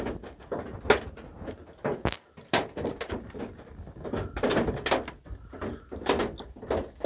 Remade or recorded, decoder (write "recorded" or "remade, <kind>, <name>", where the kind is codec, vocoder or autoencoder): recorded